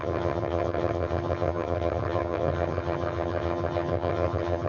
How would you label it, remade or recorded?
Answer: remade